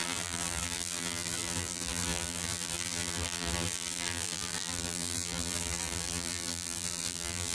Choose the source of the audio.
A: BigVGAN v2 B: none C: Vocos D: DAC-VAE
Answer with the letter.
A